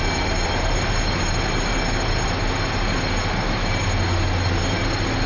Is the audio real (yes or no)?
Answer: yes